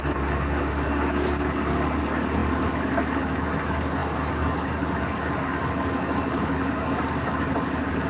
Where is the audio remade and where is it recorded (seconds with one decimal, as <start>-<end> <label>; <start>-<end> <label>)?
0.0-8.1 remade